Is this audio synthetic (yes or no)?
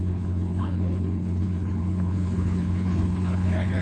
yes